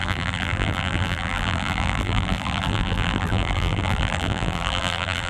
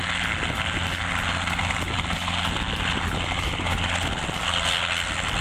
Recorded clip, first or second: second